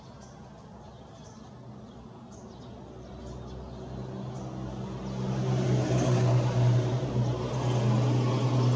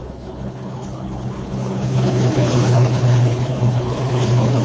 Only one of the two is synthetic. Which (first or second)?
second